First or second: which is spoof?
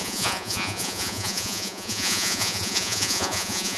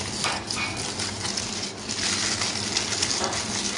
first